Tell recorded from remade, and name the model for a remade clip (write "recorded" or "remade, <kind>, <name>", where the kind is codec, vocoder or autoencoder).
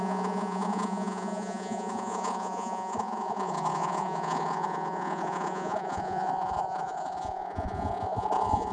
remade, vocoder, Vocos